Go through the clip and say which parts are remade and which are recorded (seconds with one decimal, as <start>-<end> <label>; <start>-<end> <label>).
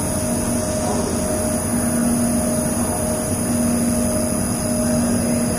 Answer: 0.0-5.6 recorded